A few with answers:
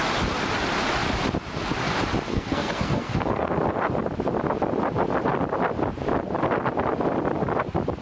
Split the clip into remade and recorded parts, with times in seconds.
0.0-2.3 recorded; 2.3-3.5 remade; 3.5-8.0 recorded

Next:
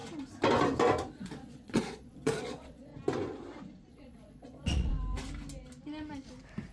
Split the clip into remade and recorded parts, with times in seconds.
0.0-1.1 recorded; 1.1-2.9 remade; 2.9-3.9 recorded; 3.9-4.9 remade; 4.9-6.7 recorded

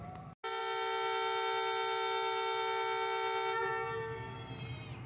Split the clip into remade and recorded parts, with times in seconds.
0.0-5.1 recorded

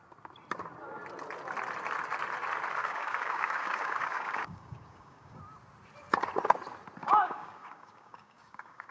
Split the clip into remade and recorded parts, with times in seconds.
0.0-2.8 recorded; 2.8-5.4 remade; 5.4-7.0 recorded; 7.0-8.9 remade

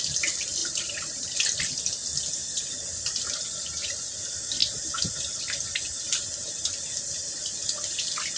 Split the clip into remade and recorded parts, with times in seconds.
0.0-0.6 recorded; 0.6-1.6 remade; 1.6-2.4 recorded; 2.4-3.0 remade; 3.0-4.6 recorded; 4.6-5.4 remade; 5.4-8.4 recorded

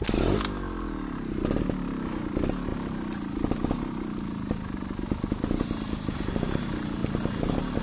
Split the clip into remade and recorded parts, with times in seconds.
0.0-7.8 recorded